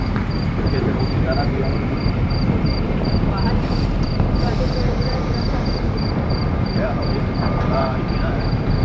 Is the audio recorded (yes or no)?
no